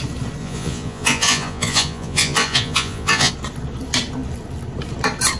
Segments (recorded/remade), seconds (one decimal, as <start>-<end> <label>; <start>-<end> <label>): 0.0-0.4 recorded; 0.4-3.3 remade; 3.3-5.4 recorded